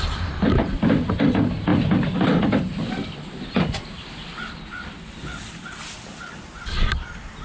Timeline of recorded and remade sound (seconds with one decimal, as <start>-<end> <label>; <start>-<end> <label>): 0.0-1.7 recorded; 1.7-5.9 remade; 5.9-7.4 recorded